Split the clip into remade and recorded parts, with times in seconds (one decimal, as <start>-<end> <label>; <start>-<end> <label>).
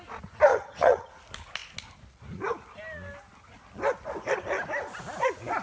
0.0-0.5 recorded; 0.5-1.1 remade; 1.1-5.6 recorded